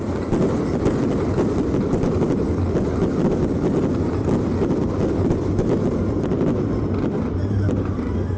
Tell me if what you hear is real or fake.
real